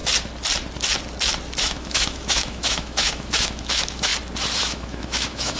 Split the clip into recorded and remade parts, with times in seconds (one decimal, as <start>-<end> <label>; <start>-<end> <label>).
0.0-1.6 recorded; 1.6-4.1 remade; 4.1-4.6 recorded; 4.6-5.6 remade